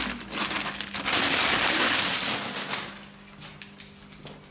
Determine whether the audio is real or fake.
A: real